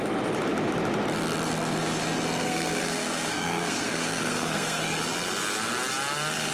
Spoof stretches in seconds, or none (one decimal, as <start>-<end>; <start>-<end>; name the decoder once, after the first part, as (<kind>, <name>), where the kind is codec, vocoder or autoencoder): 2.4-4.8 (codec, SNAC)